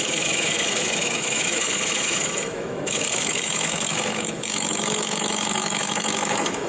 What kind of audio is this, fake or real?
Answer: fake